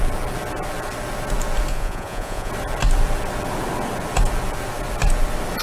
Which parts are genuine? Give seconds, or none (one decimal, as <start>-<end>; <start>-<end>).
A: 0.0-1.7; 2.5-5.6